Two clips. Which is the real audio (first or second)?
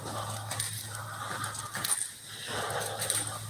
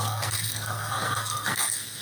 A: first